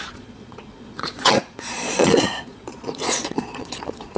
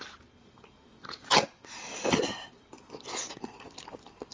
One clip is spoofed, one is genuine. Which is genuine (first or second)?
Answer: second